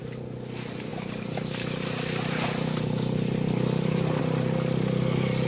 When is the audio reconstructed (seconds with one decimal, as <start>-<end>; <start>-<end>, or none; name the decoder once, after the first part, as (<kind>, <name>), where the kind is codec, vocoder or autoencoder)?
0.9-4.2 (vocoder, BigVGAN v2)